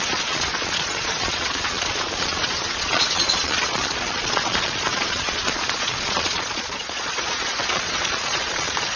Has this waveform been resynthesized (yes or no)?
yes